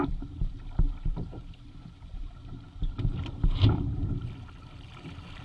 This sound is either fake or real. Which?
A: fake